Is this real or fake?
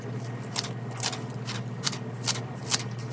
real